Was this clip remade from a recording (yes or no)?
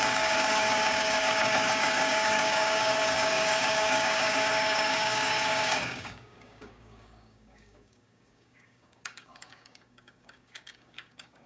yes